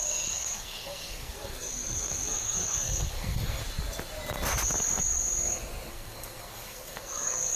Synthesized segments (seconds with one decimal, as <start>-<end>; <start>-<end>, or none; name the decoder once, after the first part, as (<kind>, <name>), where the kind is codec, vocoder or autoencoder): 0.0-3.6 (codec, SNAC); 5.9-7.6